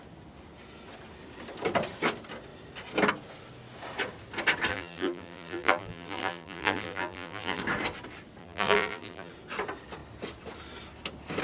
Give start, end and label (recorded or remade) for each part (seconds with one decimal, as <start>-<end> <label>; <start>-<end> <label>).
0.0-4.7 recorded; 4.7-7.6 remade; 7.6-8.4 recorded; 8.4-9.3 remade; 9.3-11.4 recorded